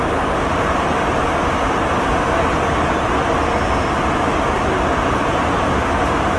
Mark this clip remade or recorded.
recorded